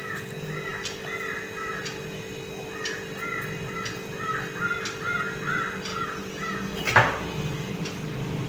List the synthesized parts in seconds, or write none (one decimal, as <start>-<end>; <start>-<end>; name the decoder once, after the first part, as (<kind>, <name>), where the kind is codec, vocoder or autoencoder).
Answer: none